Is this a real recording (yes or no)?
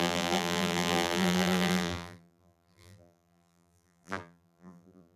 no